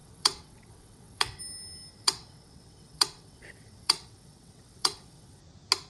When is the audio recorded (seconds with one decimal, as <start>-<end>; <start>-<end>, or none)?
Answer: 1.4-1.9; 5.4-5.9